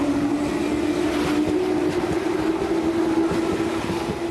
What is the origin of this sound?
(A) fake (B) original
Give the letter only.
B